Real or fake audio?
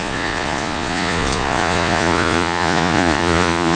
fake